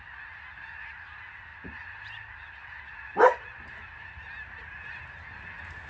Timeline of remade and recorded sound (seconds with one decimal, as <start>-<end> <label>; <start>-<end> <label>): 0.0-5.9 recorded